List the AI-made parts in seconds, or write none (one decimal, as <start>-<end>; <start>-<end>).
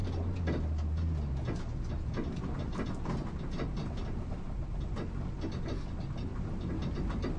none